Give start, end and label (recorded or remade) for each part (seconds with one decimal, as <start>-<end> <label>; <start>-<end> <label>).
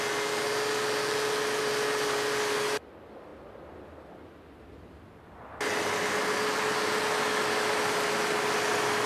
0.0-9.1 recorded